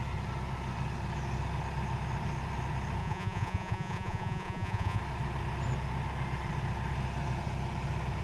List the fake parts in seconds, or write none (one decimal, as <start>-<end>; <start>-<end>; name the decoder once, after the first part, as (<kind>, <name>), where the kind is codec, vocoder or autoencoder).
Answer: 3.0-5.0 (vocoder, Vocos)

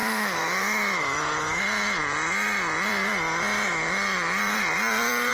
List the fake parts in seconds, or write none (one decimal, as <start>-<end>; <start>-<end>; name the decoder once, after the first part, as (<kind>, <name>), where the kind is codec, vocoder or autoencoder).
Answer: 0.0-1.6 (autoencoder, DAC-VAE)

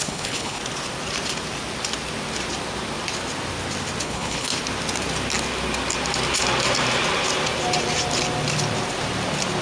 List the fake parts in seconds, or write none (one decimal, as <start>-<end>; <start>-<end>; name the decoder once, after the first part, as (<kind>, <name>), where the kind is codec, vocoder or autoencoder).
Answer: 0.0-0.6 (codec, HILCodec); 4.0-4.5

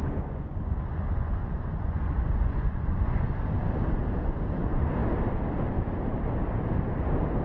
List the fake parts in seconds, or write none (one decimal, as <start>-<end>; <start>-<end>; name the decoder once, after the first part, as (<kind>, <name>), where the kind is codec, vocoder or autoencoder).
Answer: 0.0-3.4 (vocoder, Vocos)

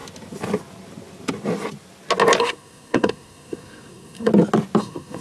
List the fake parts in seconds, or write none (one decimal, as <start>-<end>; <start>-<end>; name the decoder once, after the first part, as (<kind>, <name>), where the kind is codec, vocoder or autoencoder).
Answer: 2.4-4.3 (codec, SNAC); 4.8-5.2